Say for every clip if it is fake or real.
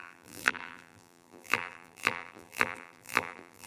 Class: fake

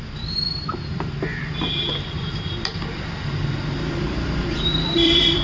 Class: fake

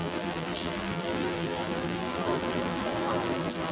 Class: fake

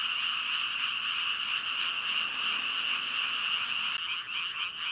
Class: real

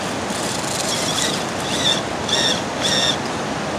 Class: real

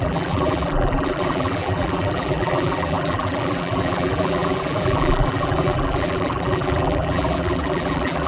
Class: fake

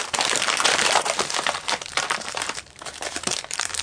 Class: fake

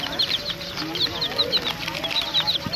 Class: real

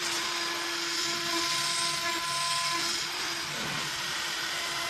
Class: real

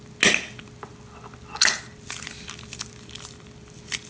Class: real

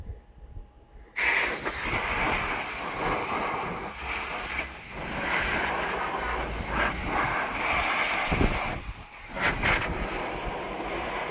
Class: real